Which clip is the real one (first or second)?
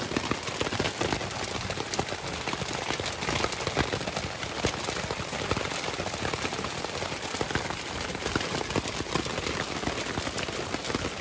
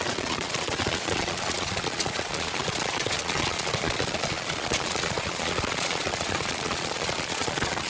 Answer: first